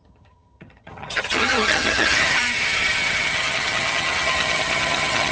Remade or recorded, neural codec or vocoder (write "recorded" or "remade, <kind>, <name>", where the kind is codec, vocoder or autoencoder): remade, vocoder, HiFi-GAN